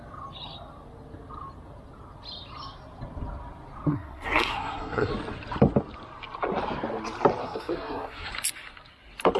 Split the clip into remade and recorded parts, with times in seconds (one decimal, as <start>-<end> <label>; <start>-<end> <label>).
0.0-3.9 recorded; 3.9-5.1 remade; 5.1-7.4 recorded; 7.4-8.3 remade; 8.3-9.4 recorded